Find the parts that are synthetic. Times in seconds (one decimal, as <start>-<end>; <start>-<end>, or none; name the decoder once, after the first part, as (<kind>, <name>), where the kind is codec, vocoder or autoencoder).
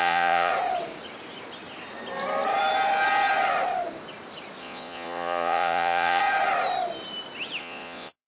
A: 0.0-0.5 (vocoder, Vocos); 4.6-6.2; 7.6-8.3